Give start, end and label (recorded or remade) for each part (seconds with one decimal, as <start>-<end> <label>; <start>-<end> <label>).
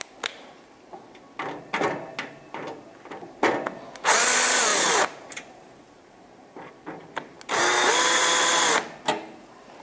0.0-4.7 recorded; 4.7-6.7 remade; 6.7-9.8 recorded